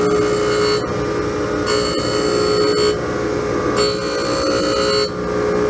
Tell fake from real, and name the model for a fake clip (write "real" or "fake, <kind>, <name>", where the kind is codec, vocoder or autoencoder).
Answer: real